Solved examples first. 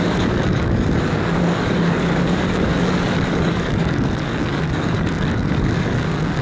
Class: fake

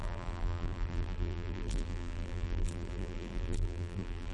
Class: fake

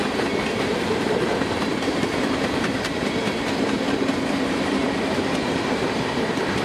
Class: fake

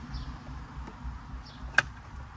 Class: real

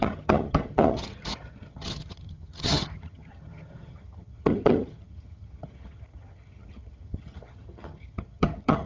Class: fake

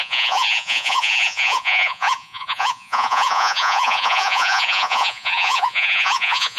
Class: fake